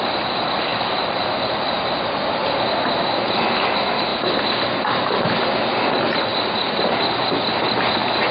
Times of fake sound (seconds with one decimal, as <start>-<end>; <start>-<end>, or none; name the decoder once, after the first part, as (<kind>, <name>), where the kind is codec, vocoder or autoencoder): 0.7-1.9 (vocoder, BigVGAN v2)